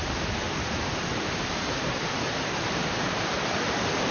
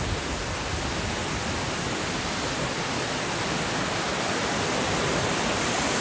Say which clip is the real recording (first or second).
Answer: second